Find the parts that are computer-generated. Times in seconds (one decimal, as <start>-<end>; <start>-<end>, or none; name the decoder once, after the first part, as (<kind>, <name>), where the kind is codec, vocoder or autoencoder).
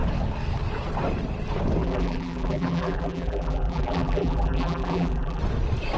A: 1.8-5.4 (vocoder, BigVGAN v2)